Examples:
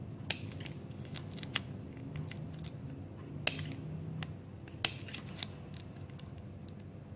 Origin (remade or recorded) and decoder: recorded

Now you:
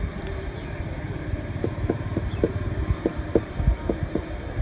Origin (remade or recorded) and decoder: remade, vocoder, BigVGAN v2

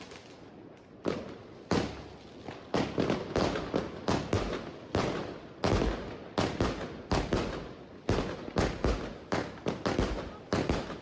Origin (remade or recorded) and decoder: recorded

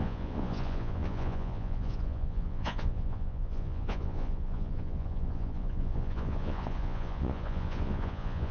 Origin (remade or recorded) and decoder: remade, vocoder, Vocos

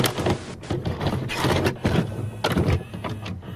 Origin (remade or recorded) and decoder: recorded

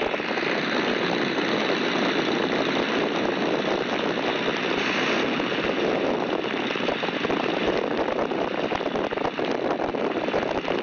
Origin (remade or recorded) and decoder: recorded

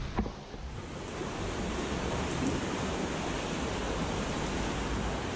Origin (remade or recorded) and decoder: recorded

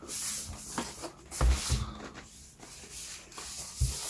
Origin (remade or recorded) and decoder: recorded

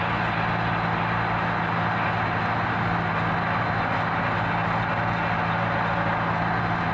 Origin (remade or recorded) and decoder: recorded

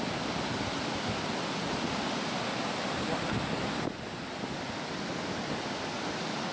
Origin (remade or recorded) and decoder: recorded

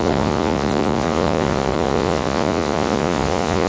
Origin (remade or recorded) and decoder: remade, vocoder, Vocos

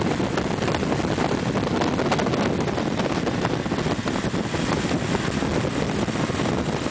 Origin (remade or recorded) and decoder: recorded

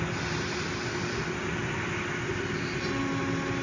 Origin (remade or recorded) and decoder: recorded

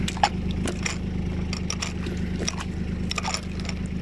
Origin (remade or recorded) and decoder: recorded